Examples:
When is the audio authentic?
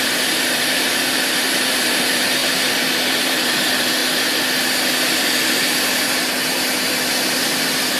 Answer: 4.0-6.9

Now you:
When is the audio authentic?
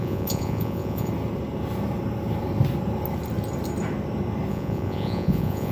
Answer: 1.1-4.5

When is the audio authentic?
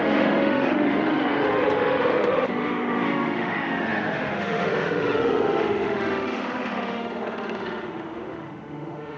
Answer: none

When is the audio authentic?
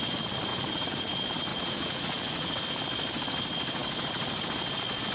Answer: 0.0-0.5; 1.1-1.5; 2.6-5.1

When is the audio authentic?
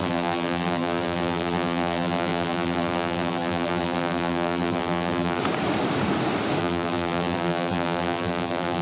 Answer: 5.4-6.6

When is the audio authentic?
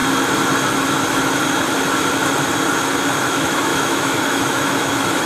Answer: 0.0-3.2